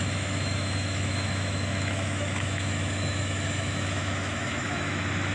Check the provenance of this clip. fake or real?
fake